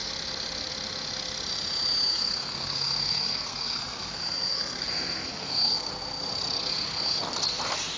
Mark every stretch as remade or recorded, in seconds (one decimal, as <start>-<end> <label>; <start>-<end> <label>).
0.0-2.1 recorded; 2.1-5.9 remade; 5.9-6.6 recorded; 6.6-7.2 remade; 7.2-8.0 recorded